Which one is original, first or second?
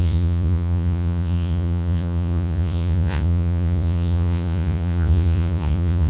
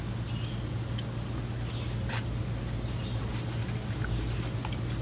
second